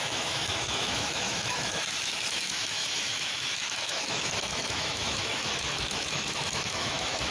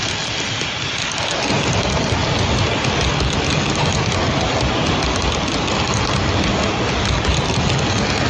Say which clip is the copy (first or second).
first